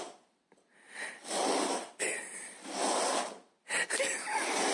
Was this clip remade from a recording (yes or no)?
no